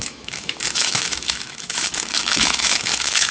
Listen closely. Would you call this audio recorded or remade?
remade